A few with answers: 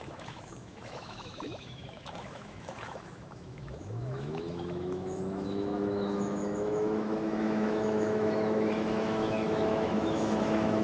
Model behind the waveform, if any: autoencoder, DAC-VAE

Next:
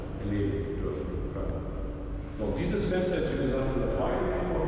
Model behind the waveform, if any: none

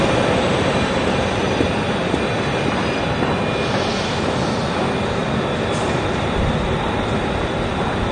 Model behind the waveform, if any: none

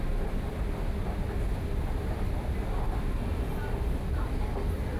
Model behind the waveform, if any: none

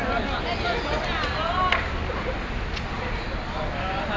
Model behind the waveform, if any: none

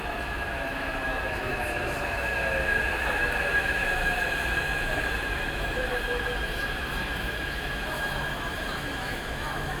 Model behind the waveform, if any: autoencoder, DAC-VAE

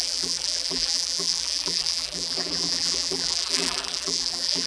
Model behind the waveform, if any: vocoder, BigVGAN v2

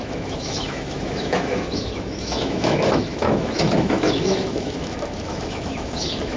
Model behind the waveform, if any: autoencoder, DAC-VAE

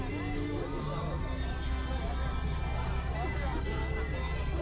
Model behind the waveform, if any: none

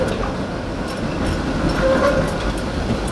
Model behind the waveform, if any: none